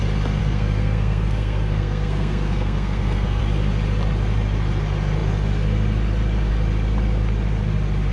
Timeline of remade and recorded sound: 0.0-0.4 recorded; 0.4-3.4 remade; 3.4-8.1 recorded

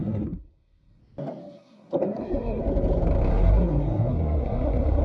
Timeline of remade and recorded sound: 0.0-1.0 remade; 1.0-1.4 recorded; 1.4-2.6 remade; 2.6-3.3 recorded; 3.3-5.0 remade

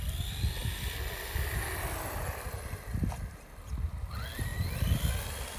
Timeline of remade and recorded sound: 0.0-5.6 recorded